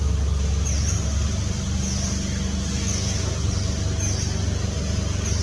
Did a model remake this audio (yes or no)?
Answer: no